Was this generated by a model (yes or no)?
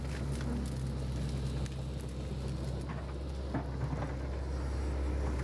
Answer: no